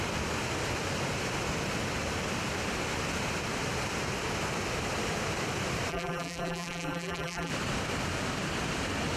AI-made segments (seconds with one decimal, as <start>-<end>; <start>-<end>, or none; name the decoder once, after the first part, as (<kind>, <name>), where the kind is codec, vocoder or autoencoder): 5.9-7.5 (vocoder, BigVGAN v2)